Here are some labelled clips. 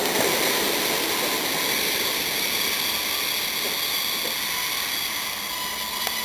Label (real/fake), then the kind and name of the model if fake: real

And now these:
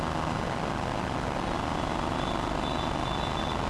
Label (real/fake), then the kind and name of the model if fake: real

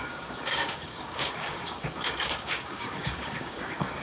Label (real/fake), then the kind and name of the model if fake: fake, codec, DAC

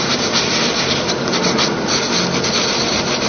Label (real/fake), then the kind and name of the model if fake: real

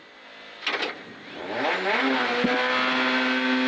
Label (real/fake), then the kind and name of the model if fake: real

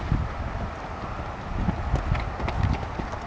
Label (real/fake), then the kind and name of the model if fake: real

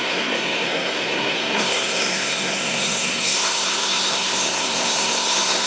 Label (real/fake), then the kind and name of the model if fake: fake, codec, SNAC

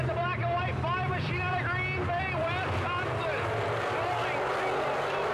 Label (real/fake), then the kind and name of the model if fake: real